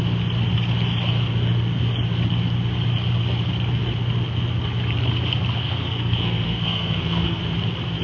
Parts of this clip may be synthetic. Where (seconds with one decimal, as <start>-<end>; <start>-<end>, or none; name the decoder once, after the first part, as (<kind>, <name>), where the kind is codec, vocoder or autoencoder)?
5.6-7.4 (codec, SNAC)